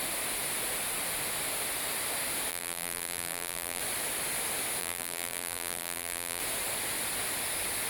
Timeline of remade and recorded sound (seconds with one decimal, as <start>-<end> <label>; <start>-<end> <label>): 0.0-2.5 recorded; 2.5-3.8 remade; 3.8-4.8 recorded; 4.8-6.4 remade; 6.4-7.9 recorded